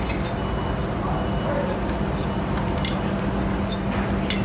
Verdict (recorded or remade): recorded